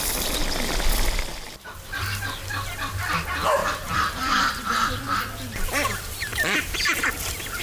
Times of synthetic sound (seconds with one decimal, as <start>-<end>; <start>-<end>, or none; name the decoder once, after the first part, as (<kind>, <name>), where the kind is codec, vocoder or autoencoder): 3.6-5.2 (vocoder, BigVGAN v2); 6.3-7.6